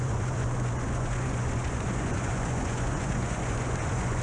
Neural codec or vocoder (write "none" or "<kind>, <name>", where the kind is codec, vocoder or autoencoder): vocoder, Vocos